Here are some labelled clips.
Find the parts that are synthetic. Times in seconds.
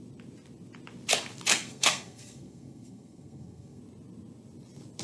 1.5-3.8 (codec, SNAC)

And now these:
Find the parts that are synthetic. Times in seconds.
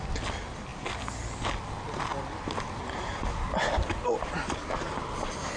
none